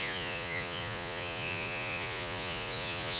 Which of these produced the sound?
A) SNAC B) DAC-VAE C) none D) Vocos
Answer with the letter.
D